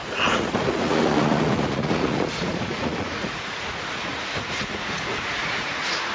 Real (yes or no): no